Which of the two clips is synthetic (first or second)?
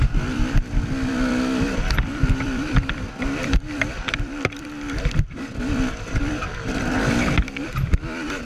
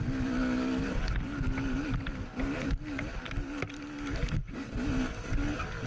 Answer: first